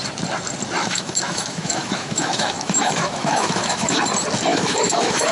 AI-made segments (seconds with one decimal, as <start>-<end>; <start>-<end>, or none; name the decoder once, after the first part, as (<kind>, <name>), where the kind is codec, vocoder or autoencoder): 0.8-4.0 (autoencoder, DAC-VAE); 4.5-5.3